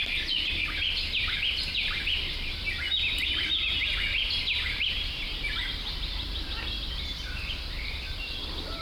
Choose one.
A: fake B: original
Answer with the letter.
A